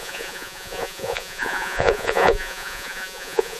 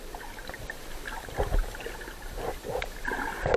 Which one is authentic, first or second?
second